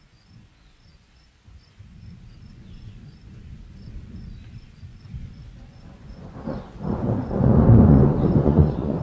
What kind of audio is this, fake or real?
fake